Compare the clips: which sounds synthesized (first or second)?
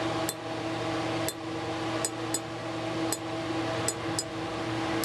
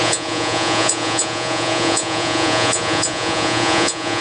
second